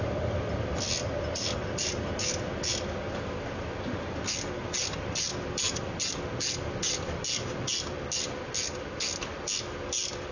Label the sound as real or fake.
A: real